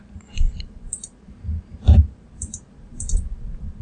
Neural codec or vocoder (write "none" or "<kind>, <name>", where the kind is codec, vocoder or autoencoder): vocoder, BigVGAN v2